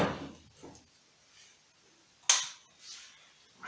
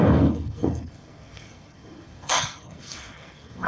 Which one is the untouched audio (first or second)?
first